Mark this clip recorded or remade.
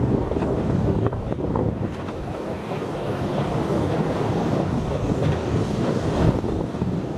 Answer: remade